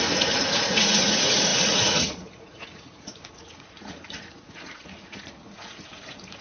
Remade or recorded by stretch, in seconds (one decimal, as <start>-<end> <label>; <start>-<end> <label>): 0.0-6.4 remade